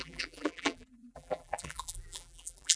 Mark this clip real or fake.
fake